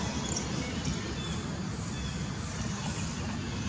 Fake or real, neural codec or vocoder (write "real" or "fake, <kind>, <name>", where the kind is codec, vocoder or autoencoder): real